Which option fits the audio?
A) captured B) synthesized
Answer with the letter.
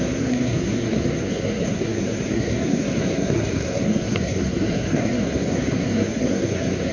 B